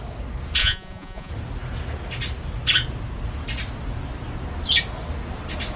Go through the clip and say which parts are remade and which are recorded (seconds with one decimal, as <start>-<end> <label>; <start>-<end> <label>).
0.0-0.6 recorded; 0.6-1.3 remade; 1.3-5.8 recorded